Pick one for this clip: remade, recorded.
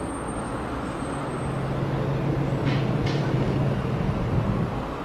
recorded